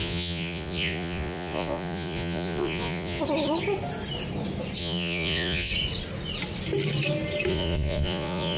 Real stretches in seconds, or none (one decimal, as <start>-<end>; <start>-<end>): 3.2-4.8; 5.7-7.5